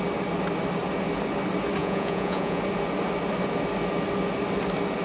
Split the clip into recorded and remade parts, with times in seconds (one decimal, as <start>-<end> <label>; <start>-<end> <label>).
0.0-1.8 recorded; 1.8-2.6 remade; 2.6-5.0 recorded